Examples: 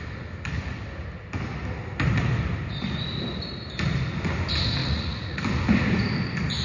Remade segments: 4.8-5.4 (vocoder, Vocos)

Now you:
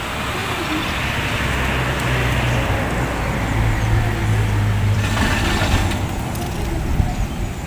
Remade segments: 0.4-1.2 (vocoder, BigVGAN v2); 4.2-6.1

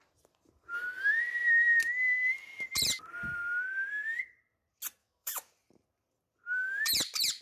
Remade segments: 5.0-5.5 (autoencoder, DAC-VAE)